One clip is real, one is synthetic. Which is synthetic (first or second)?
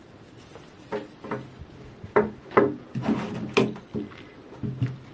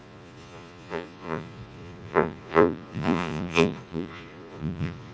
second